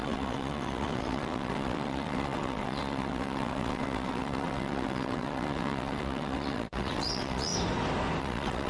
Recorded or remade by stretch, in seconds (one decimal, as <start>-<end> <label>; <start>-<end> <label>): 0.0-7.5 remade; 7.5-8.2 recorded; 8.2-8.7 remade